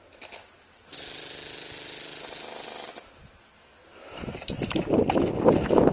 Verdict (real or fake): real